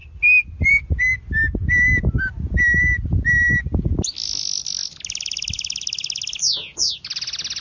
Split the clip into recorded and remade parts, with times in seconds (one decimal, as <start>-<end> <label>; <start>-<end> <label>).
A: 0.0-7.6 recorded